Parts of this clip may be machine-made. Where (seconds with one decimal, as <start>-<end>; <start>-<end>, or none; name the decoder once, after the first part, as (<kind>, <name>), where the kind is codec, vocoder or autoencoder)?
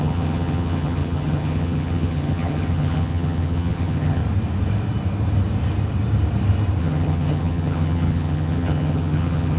0.0-4.2 (vocoder, HiFi-GAN); 6.8-9.6